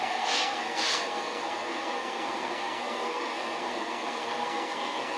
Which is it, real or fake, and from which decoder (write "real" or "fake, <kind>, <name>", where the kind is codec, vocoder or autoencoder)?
fake, codec, SNAC